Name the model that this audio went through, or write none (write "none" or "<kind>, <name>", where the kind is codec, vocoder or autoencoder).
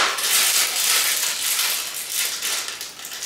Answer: none